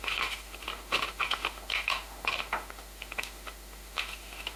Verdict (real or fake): fake